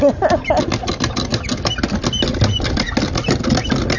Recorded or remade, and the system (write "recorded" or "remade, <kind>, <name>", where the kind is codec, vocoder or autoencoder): recorded